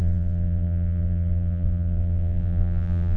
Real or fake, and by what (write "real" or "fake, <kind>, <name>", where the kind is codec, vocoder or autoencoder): fake, vocoder, BigVGAN v2